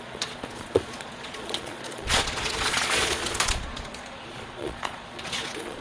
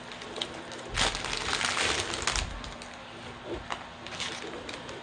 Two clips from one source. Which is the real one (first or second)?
second